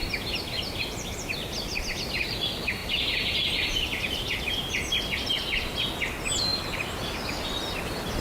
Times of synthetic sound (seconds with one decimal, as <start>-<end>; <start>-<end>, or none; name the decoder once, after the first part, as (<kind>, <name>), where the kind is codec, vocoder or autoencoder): none